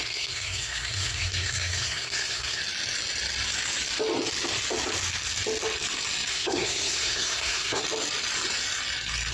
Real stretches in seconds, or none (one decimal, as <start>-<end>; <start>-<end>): 2.6-6.3; 7.8-9.3